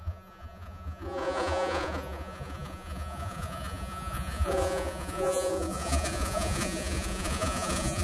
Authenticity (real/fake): fake